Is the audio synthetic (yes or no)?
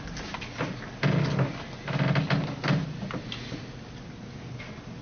no